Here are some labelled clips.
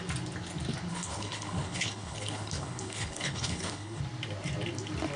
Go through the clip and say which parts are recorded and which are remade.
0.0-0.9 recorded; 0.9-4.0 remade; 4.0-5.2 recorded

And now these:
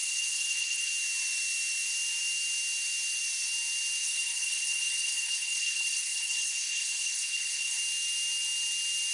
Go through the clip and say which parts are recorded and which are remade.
0.0-0.9 remade; 0.9-4.0 recorded; 4.0-7.8 remade; 7.8-9.1 recorded

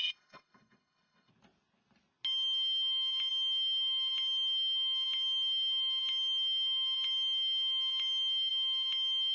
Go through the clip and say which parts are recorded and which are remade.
0.0-1.3 remade; 1.3-9.3 recorded